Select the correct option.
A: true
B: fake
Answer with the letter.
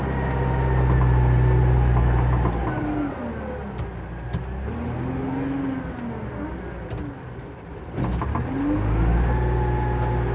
A